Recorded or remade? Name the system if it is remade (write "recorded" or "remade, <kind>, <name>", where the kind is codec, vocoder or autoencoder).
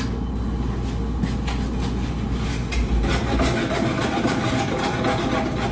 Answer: recorded